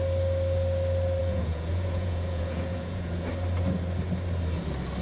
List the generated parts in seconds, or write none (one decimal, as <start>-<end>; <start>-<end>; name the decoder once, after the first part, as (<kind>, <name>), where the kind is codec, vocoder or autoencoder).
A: 1.2-3.3 (vocoder, Vocos)